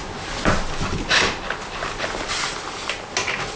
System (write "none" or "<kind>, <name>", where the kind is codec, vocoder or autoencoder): none